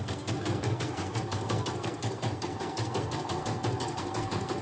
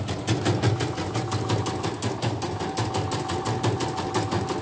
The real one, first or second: second